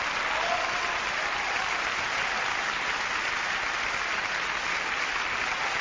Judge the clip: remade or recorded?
recorded